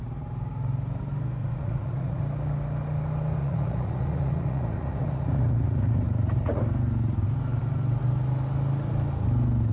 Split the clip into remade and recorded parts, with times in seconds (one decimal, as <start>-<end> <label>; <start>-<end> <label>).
0.0-1.4 recorded; 1.4-2.2 remade; 2.2-3.4 recorded; 3.4-6.6 remade; 6.6-9.7 recorded